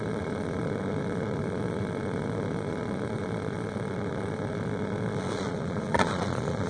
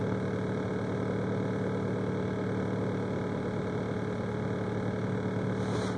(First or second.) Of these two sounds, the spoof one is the first